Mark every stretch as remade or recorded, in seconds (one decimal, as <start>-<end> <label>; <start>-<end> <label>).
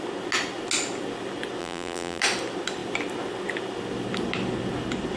0.0-1.6 recorded; 1.6-2.2 remade; 2.2-5.2 recorded